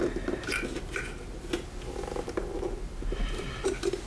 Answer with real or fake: real